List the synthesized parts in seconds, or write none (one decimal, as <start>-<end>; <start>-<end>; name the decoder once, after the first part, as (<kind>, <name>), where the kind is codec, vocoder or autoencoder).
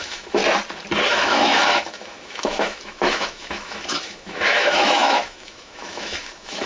0.0-0.4 (autoencoder, DAC-VAE); 1.1-6.7